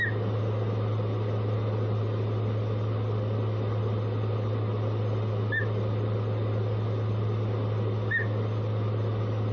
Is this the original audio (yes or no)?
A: yes